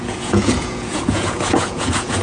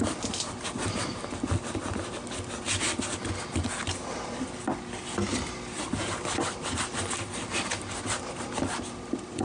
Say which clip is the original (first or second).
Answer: second